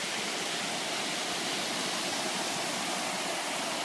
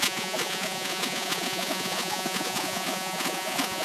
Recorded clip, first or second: first